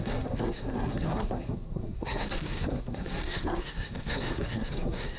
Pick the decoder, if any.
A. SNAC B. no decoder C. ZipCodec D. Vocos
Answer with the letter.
A